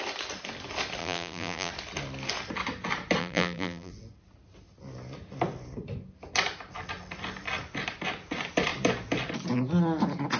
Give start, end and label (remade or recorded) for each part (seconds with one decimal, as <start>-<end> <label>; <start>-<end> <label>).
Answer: 0.0-1.0 recorded; 1.0-1.7 remade; 1.7-3.2 recorded; 3.2-3.9 remade; 3.9-10.4 recorded